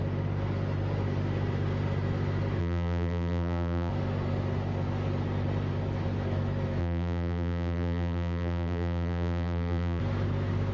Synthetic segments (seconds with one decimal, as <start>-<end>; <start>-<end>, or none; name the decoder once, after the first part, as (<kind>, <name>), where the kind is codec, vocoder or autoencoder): 2.6-3.9 (vocoder, BigVGAN v2); 6.8-10.0